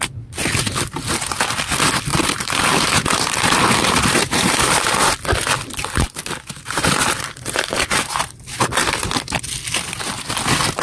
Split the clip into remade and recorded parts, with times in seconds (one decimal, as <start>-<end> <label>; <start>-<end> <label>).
0.0-2.1 recorded; 2.1-4.8 remade; 4.8-6.2 recorded; 6.2-9.1 remade; 9.1-10.8 recorded